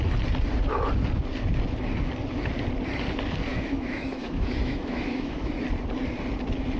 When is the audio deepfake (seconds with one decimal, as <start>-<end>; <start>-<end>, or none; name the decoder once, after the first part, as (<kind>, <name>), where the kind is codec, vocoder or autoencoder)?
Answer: 3.5-5.5 (autoencoder, DAC-VAE)